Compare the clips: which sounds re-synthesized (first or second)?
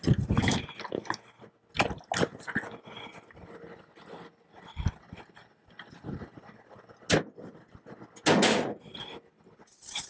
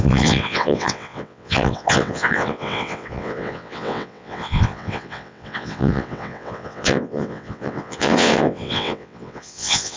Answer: second